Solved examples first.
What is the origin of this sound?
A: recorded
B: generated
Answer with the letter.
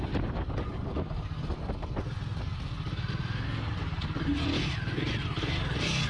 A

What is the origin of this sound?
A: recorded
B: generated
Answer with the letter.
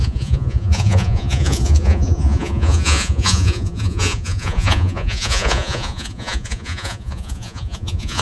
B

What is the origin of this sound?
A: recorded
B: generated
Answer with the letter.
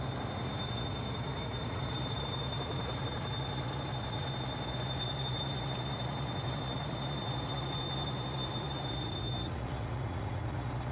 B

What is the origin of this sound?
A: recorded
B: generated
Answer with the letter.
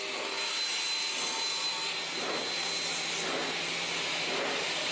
A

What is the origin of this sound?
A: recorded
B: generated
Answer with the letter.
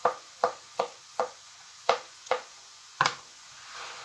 B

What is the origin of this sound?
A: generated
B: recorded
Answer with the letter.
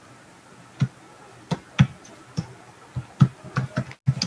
B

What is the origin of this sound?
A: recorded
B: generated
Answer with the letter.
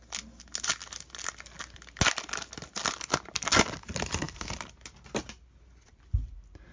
A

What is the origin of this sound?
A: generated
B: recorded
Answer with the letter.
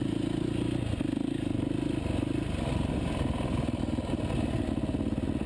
B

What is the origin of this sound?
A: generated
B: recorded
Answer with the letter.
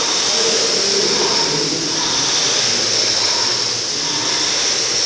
B